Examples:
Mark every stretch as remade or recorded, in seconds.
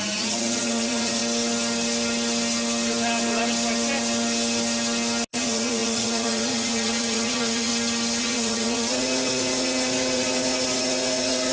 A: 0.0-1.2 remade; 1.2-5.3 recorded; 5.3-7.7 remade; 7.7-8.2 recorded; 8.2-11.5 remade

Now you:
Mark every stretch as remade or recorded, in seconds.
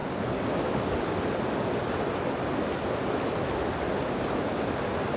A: 0.0-5.2 recorded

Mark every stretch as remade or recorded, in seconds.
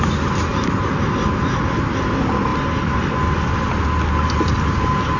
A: 0.0-5.2 recorded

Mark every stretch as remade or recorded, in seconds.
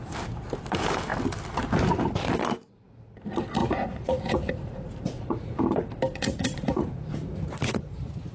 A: 0.0-3.6 recorded; 3.6-5.6 remade; 5.6-6.1 recorded; 6.1-7.9 remade; 7.9-8.3 recorded